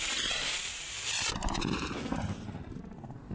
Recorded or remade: remade